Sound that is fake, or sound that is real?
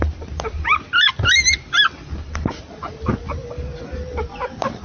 real